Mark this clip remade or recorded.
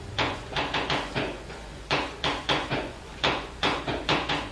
remade